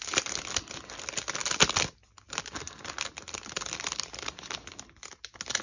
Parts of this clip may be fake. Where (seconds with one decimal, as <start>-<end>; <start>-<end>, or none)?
none